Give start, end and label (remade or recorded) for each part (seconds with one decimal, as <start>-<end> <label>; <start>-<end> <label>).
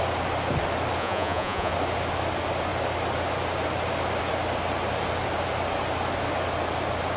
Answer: 0.0-1.0 recorded; 1.0-1.7 remade; 1.7-7.2 recorded